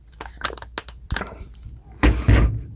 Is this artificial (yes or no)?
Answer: no